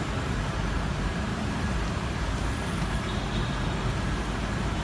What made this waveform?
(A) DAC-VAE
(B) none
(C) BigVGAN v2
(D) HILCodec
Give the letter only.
C